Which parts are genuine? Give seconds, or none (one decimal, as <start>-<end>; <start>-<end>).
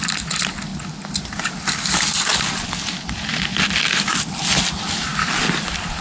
0.0-6.0